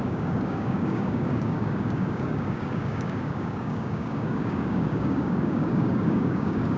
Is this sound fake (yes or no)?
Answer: yes